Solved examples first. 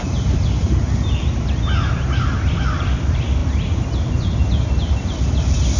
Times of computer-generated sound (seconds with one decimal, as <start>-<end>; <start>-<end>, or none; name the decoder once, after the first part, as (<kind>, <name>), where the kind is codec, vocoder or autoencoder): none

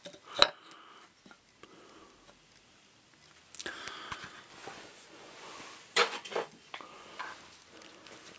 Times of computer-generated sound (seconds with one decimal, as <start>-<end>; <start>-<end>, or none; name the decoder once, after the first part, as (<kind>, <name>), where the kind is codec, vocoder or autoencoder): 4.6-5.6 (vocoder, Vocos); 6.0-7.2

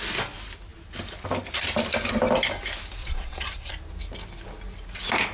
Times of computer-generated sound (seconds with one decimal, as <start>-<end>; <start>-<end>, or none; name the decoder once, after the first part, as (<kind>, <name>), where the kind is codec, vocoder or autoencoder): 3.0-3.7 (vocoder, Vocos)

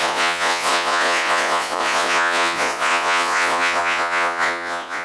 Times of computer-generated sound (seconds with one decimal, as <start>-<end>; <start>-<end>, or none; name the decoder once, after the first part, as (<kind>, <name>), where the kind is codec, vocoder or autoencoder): 0.0-5.0 (vocoder, Vocos)

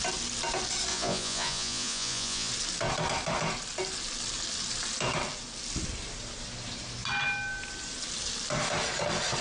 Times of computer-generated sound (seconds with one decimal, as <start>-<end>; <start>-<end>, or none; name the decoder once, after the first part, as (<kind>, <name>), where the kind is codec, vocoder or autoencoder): 0.9-2.5 (vocoder, Vocos)